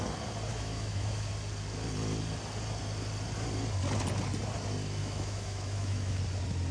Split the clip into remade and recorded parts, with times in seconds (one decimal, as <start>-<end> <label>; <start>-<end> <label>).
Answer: 0.0-0.5 recorded; 0.5-1.3 remade; 1.3-5.0 recorded; 5.0-6.2 remade; 6.2-6.7 recorded